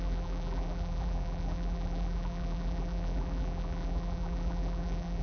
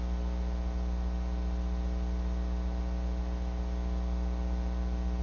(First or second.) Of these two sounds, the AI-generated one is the first